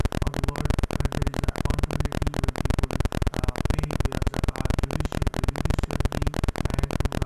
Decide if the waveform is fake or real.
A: real